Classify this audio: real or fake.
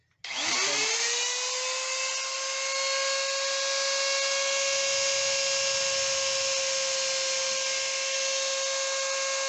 real